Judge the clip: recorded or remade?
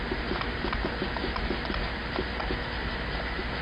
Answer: recorded